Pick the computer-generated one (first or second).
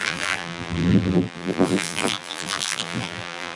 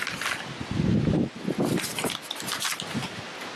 first